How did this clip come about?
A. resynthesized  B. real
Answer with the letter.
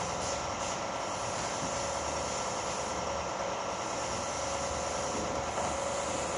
B